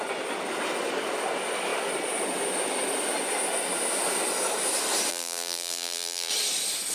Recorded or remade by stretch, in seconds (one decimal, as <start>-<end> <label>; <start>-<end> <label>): 0.0-5.1 recorded; 5.1-6.3 remade; 6.3-6.9 recorded